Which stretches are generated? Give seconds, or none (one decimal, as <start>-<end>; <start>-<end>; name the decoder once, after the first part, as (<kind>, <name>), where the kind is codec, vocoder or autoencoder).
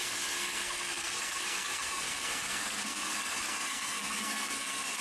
0.0-5.0 (codec, SNAC)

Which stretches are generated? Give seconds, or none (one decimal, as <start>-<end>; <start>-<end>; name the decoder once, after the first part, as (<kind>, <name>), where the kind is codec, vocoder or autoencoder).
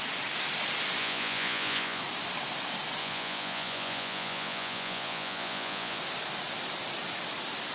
1.0-2.0 (vocoder, Vocos); 3.0-6.0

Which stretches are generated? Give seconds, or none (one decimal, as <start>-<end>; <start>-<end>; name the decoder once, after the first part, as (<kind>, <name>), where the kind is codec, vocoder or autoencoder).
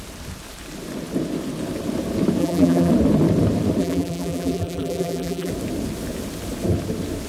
2.4-2.9 (vocoder, BigVGAN v2); 3.8-5.5